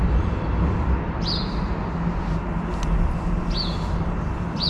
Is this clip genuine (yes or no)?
yes